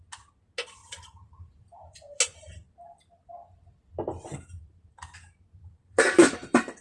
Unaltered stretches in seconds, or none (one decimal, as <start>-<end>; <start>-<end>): 0.0-0.8; 3.3-5.6